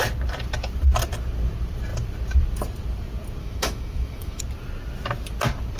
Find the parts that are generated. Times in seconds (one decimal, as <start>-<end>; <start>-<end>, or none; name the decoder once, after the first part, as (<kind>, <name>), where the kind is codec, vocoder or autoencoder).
3.4-4.4 (autoencoder, DAC-VAE)